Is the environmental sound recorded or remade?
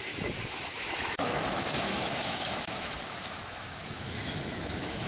remade